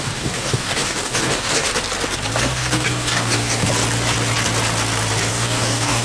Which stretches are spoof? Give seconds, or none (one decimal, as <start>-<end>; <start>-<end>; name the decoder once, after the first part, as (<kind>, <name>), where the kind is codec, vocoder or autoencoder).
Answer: 0.0-1.7 (codec, DAC); 2.4-3.7; 5.3-6.0